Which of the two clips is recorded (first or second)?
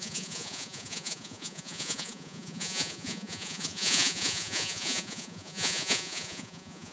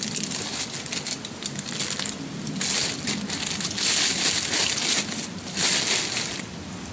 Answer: second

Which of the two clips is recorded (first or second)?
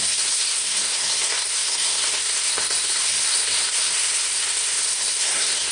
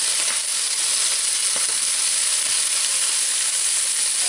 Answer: second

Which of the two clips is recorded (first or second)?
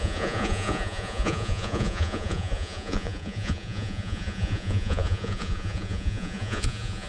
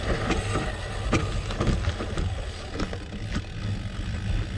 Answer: second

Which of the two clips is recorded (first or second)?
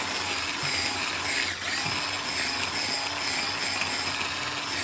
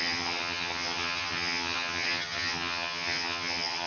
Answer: first